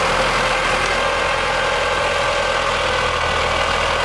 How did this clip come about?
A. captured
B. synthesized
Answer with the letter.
A